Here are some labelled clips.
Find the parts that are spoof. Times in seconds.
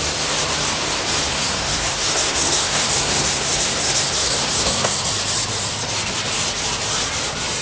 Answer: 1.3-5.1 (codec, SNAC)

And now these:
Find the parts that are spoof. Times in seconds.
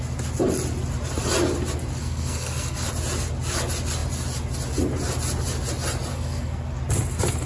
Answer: 2.0-2.9 (codec, SNAC); 6.1-6.8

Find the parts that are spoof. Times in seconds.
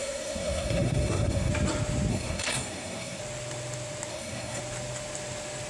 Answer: 0.0-1.5 (codec, SNAC); 2.1-3.2; 4.1-4.6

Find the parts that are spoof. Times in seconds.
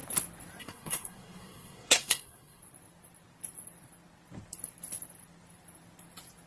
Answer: 0.6-2.6 (codec, SNAC)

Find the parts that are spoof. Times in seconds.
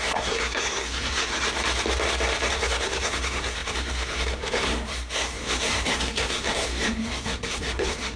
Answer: 0.0-1.3 (codec, SNAC); 2.5-8.2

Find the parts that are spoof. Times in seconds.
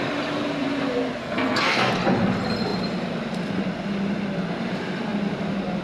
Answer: 1.2-1.9 (codec, SNAC)